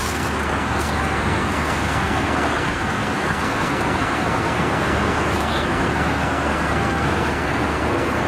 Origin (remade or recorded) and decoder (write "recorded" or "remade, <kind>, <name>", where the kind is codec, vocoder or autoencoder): remade, codec, SNAC